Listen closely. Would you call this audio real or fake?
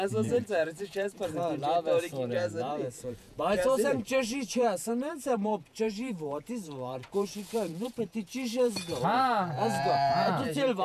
fake